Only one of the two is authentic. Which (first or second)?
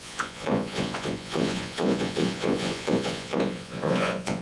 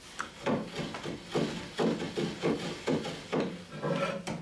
second